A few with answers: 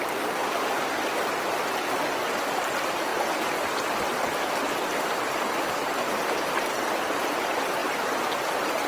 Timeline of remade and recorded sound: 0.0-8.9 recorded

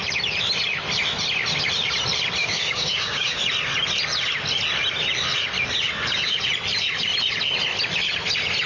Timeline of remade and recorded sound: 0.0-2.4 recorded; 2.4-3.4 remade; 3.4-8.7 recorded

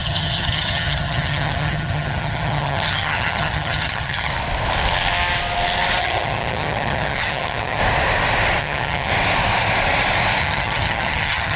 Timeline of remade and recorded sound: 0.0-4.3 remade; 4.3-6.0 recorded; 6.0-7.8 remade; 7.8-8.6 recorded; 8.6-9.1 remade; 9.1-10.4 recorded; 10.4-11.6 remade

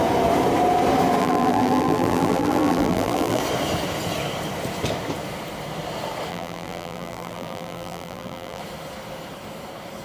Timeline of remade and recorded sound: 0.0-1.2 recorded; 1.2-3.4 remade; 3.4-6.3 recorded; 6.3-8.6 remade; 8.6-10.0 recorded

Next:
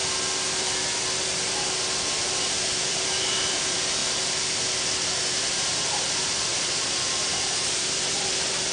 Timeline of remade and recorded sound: 0.0-2.1 recorded; 2.1-4.0 remade; 4.0-5.2 recorded; 5.2-8.7 remade

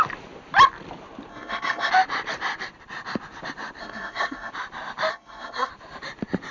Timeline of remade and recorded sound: 0.0-1.3 recorded; 1.3-1.9 remade; 1.9-3.8 recorded; 3.8-4.5 remade; 4.5-5.1 recorded; 5.1-5.7 remade; 5.7-6.5 recorded

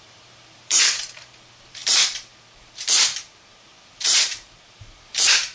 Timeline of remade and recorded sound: 0.0-5.5 remade

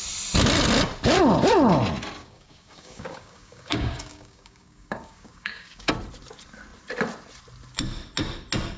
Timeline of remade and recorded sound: 0.0-2.2 recorded; 2.2-5.9 remade; 5.9-8.8 recorded